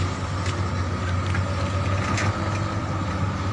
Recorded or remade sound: recorded